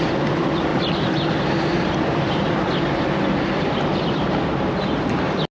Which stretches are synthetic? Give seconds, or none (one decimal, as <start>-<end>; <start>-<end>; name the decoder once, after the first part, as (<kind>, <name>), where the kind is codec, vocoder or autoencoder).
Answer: none

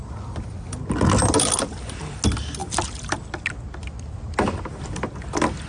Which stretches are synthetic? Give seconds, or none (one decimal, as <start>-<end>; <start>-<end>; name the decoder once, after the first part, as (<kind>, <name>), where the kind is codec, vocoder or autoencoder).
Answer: none